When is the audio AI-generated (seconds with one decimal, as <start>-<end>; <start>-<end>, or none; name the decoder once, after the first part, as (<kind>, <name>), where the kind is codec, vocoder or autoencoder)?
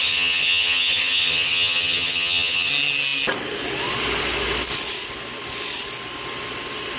0.0-2.7 (vocoder, HiFi-GAN)